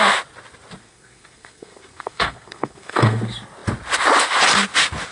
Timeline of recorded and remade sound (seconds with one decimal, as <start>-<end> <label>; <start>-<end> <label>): 0.0-0.8 recorded; 0.8-3.2 remade; 3.2-5.1 recorded